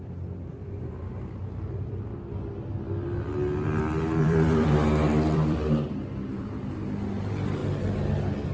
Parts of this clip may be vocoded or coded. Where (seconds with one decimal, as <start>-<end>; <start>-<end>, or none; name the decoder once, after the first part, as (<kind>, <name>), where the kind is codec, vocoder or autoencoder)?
0.6-1.1 (vocoder, BigVGAN v2); 4.2-6.4